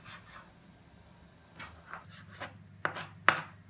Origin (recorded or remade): recorded